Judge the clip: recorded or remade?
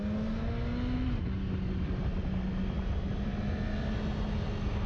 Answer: recorded